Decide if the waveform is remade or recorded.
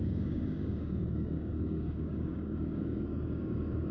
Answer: remade